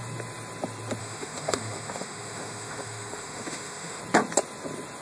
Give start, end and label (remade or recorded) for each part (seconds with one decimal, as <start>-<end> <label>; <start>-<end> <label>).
0.0-1.0 recorded; 1.0-4.0 remade; 4.0-5.0 recorded